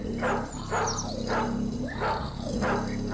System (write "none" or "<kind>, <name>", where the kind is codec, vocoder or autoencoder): none